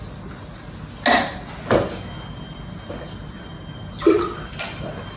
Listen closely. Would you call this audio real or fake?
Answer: real